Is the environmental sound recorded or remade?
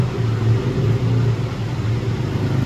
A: recorded